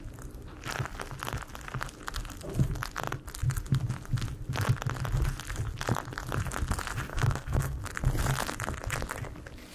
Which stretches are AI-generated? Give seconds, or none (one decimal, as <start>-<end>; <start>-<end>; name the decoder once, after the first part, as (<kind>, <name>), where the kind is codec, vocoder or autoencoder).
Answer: 7.1-7.8 (codec, SNAC)